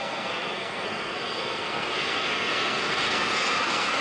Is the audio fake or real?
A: fake